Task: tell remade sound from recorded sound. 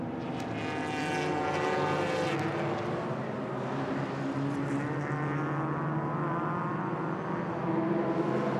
recorded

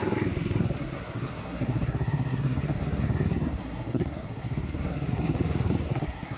remade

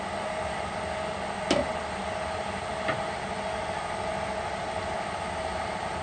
recorded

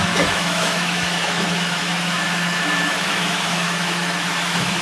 remade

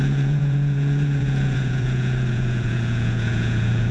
remade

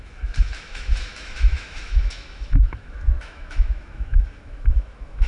remade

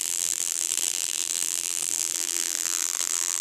remade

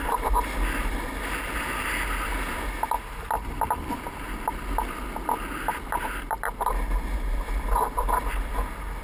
recorded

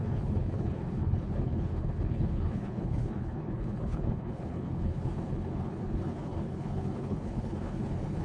remade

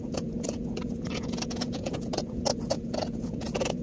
remade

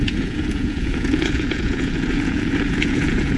remade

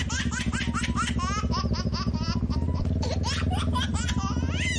recorded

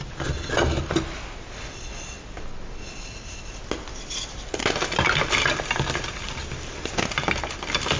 recorded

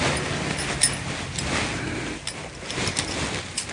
recorded